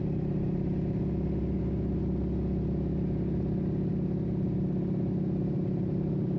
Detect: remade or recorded recorded